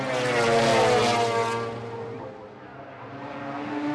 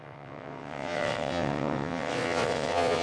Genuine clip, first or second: first